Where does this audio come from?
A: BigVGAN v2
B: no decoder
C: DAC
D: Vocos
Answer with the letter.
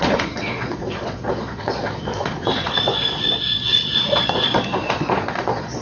D